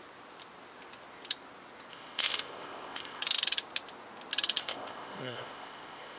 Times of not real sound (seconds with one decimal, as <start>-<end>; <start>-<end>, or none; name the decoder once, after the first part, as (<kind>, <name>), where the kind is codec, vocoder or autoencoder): 1.9-3.2 (codec, ZipCodec); 4.6-6.2